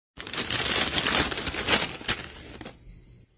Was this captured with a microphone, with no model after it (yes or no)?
yes